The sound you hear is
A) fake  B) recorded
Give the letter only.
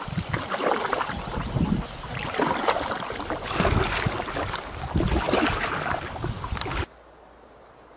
B